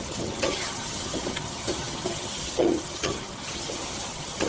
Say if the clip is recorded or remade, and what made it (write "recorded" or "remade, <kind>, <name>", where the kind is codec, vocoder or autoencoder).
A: remade, vocoder, HiFi-GAN